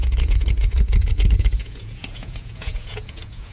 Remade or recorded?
remade